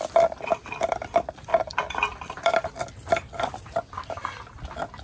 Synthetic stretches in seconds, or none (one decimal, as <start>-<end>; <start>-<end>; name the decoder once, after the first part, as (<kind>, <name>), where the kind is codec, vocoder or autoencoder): none